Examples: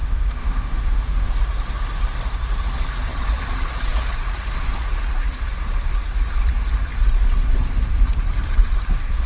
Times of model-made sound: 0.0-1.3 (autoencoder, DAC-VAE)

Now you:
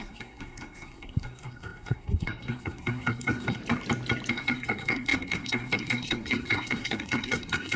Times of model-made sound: 0.0-3.6 (codec, SNAC); 4.3-7.8

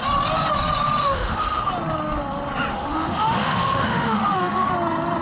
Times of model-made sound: 1.0-1.7 (autoencoder, DAC-VAE); 2.7-4.7

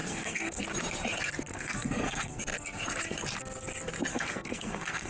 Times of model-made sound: 0.0-0.6 (codec, SNAC); 1.5-2.4; 4.1-5.1

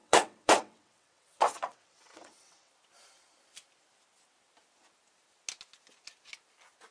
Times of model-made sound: 0.0-2.7 (vocoder, WaveNeXt)

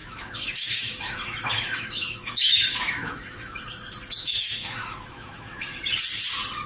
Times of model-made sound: 0.0-3.6 (autoencoder, DAC-VAE); 4.2-5.8

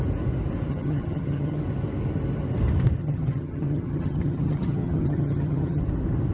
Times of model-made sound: 0.7-1.6 (vocoder, HiFi-GAN); 3.0-5.8